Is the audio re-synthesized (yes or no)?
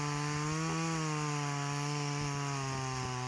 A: no